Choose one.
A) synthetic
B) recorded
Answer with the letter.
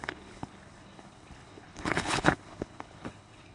A